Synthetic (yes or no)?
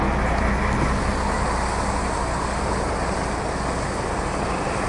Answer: no